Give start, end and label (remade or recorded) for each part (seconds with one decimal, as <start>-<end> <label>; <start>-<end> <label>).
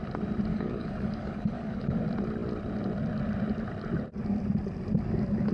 0.0-0.5 recorded; 0.5-2.0 remade; 2.0-5.5 recorded